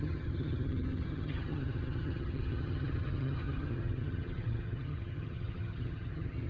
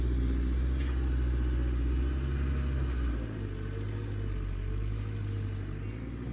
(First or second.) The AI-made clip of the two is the first